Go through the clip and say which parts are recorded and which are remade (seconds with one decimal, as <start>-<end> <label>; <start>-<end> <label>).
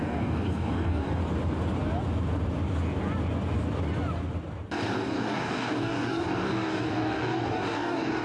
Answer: 0.0-1.2 remade; 1.2-4.8 recorded; 4.8-8.2 remade